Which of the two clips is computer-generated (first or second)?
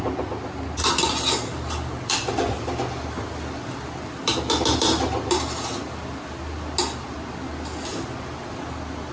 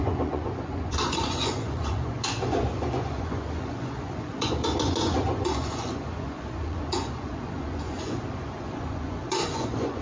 second